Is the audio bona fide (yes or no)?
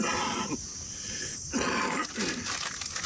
yes